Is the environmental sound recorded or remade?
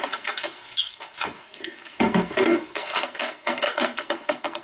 remade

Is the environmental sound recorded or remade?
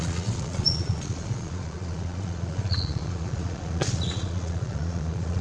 remade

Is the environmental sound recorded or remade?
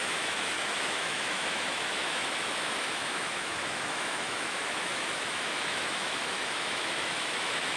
remade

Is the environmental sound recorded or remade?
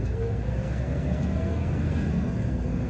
remade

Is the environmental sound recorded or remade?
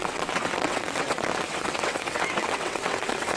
remade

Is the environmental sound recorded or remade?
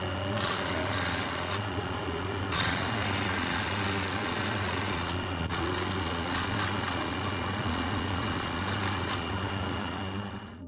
remade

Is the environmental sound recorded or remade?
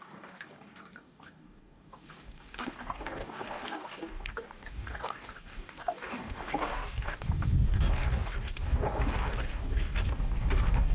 remade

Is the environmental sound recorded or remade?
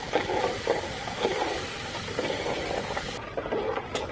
recorded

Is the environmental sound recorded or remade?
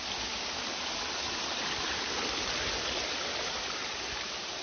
recorded